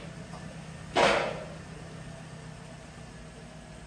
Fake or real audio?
real